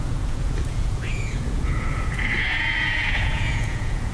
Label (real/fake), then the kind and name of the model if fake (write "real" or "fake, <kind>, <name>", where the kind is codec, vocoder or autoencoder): fake, vocoder, Vocos